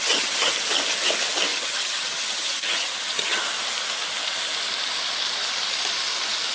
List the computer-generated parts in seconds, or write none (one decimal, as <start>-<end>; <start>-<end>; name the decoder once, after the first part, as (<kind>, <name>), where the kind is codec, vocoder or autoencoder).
0.0-0.5 (vocoder, HiFi-GAN); 1.5-3.4

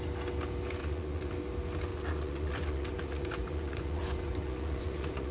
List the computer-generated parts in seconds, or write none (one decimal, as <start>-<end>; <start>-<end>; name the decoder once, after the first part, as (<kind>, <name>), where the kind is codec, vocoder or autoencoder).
0.8-1.3 (vocoder, Vocos); 1.9-5.3

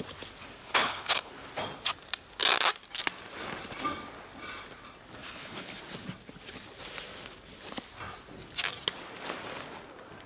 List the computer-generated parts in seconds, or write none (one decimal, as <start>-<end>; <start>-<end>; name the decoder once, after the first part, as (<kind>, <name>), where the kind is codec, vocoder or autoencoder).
0.6-1.3 (codec, HILCodec); 5.2-5.8

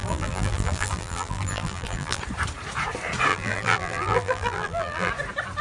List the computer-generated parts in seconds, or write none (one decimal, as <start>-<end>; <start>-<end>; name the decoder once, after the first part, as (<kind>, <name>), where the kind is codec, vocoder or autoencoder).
0.0-2.2 (vocoder, BigVGAN v2); 3.3-5.1